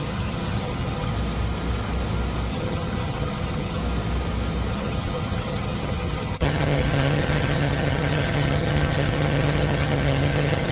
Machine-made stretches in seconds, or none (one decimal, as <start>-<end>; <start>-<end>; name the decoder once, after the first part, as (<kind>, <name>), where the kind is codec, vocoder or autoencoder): 0.0-1.1 (vocoder, HiFi-GAN); 2.5-3.8; 4.7-10.7